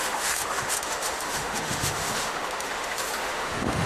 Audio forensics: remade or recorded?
remade